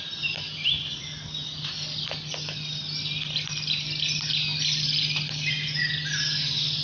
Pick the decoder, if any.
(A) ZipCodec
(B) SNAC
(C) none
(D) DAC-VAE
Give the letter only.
C